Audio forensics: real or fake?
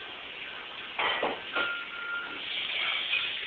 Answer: real